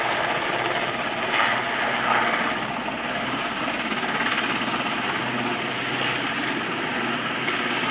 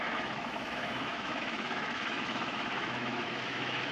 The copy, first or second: second